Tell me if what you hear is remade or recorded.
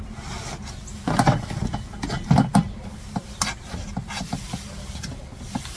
recorded